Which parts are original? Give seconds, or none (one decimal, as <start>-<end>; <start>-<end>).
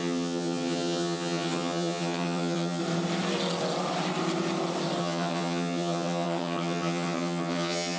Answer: 2.8-5.0